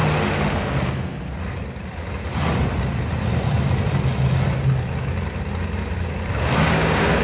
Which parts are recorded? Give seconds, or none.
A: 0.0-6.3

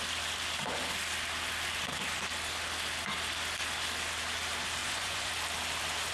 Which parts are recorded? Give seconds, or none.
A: 0.0-4.8; 5.3-6.1

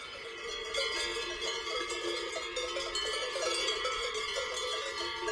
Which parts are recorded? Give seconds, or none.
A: 0.0-1.1; 2.3-3.2; 4.1-5.3

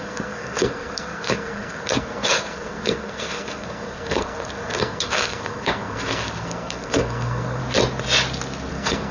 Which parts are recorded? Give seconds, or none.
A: 7.6-8.7